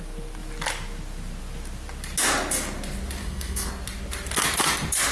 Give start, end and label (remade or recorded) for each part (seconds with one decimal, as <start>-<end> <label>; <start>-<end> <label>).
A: 0.0-3.2 recorded; 3.2-3.7 remade; 3.7-5.1 recorded